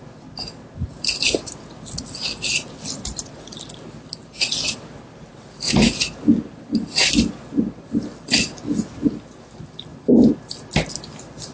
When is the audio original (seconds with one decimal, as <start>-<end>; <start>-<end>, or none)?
0.0-11.5